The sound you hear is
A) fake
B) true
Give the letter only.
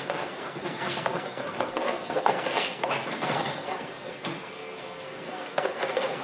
A